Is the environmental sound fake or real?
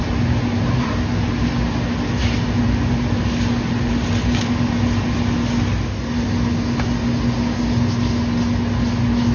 real